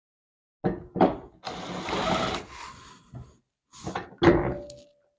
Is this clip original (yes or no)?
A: yes